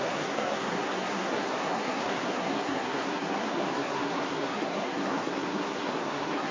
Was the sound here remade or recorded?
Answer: remade